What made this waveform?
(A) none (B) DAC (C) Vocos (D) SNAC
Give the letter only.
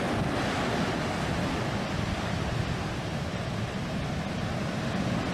A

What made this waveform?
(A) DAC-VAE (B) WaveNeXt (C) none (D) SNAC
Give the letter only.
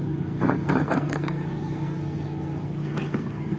D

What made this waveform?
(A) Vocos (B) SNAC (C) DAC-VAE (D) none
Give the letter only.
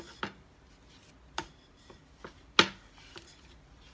D